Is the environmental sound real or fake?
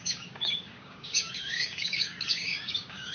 fake